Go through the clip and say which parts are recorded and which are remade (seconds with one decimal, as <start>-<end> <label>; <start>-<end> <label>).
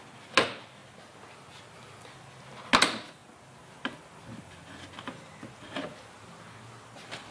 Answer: 0.0-7.3 recorded